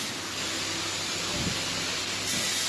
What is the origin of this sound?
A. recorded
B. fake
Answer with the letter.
A